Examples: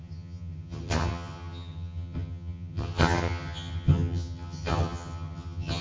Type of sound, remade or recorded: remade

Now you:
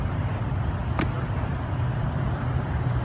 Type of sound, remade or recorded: recorded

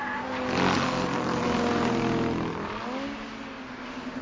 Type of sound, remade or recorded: recorded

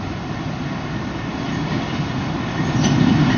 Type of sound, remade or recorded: recorded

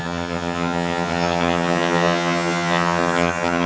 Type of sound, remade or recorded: remade